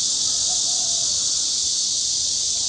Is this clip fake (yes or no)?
no